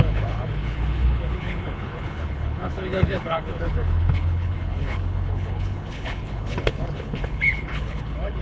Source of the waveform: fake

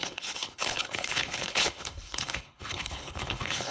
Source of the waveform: fake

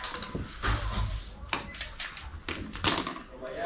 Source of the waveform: real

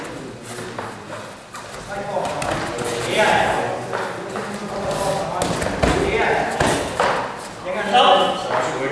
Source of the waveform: real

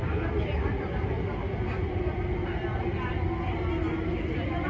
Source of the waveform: real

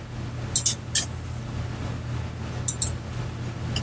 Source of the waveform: real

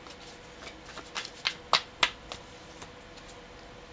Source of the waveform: real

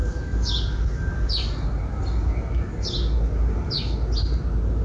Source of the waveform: real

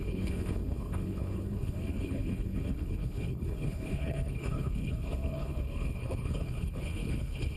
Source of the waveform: fake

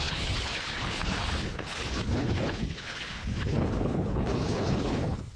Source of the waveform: fake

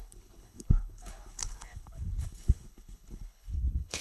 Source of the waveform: fake